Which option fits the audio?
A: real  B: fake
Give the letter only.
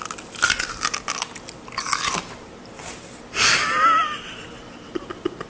A